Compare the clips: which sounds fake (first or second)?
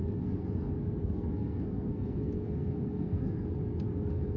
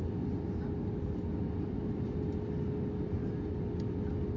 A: first